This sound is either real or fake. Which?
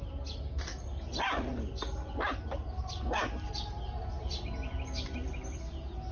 real